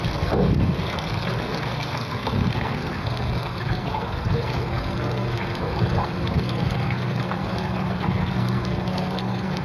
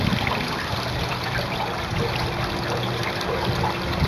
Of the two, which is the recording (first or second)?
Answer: second